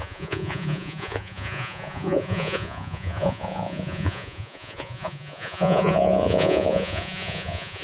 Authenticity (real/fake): fake